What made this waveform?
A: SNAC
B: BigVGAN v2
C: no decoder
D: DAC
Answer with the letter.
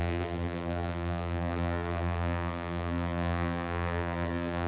B